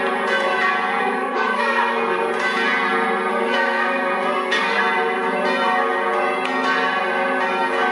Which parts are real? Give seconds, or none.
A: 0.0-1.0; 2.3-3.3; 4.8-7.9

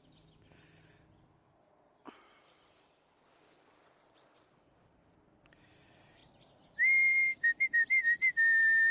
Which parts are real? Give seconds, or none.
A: 0.0-8.9

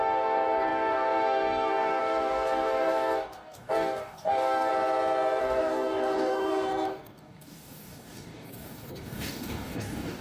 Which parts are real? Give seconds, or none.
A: 4.7-5.4

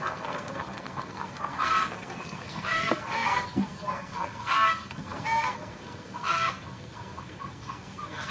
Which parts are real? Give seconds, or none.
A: none